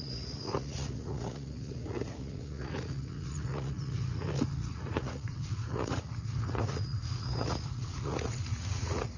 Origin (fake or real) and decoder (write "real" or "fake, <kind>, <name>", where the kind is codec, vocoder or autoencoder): fake, vocoder, Vocos